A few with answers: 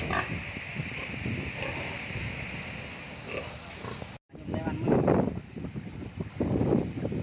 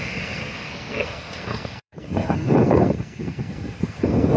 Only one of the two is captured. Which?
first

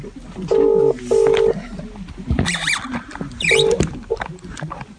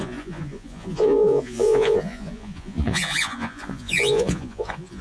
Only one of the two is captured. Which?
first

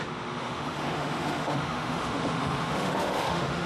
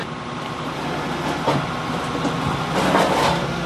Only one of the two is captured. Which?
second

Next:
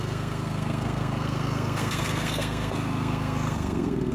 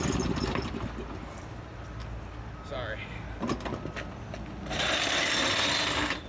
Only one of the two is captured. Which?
second